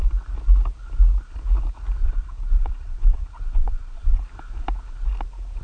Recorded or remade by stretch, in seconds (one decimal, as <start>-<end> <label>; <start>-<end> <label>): 0.0-2.0 recorded; 2.0-4.2 remade; 4.2-5.6 recorded